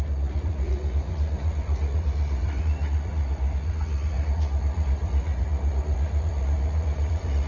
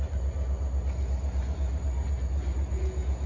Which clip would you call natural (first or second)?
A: second